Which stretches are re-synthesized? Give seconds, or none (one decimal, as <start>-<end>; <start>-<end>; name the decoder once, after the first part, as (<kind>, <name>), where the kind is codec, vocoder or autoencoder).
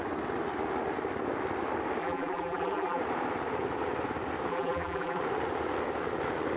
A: 2.0-3.0 (vocoder, BigVGAN v2); 4.5-5.2